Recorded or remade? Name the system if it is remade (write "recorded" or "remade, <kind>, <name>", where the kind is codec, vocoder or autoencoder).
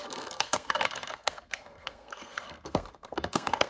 remade, codec, SNAC